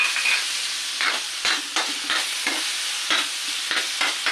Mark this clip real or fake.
real